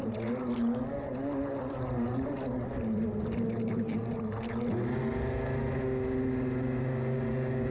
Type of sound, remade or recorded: recorded